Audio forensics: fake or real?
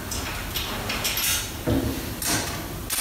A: real